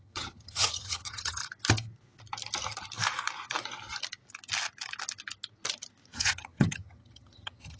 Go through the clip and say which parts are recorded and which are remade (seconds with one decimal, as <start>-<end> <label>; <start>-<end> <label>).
0.0-1.4 remade; 1.4-6.1 recorded; 6.1-7.8 remade